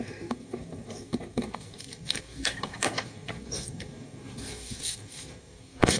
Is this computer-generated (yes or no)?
yes